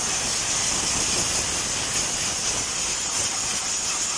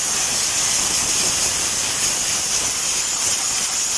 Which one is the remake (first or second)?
second